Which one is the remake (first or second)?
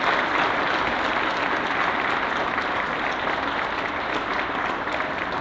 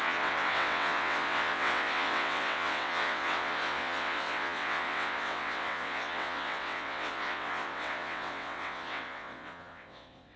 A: second